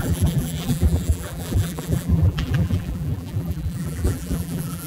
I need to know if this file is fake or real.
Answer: fake